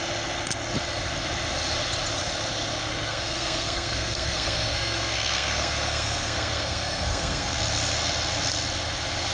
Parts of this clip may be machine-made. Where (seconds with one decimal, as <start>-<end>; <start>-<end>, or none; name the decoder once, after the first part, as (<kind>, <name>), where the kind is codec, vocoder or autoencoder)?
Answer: 2.9-7.6 (codec, SNAC)